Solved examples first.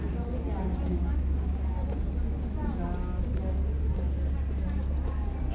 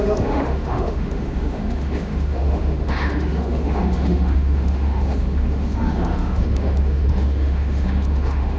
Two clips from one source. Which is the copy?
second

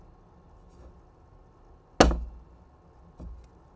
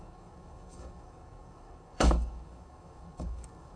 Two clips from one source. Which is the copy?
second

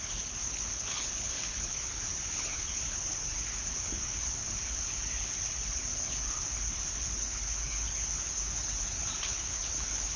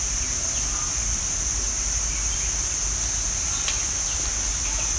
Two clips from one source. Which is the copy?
first